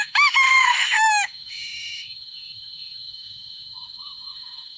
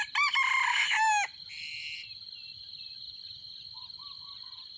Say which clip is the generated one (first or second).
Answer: first